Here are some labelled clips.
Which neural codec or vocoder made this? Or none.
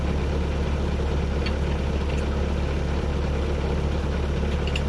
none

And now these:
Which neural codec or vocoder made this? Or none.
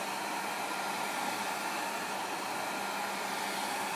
none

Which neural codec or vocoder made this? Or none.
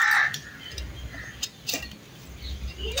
none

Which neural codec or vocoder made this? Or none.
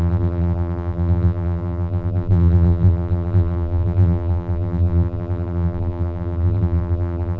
vocoder, BigVGAN v2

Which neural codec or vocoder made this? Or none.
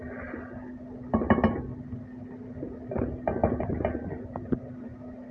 none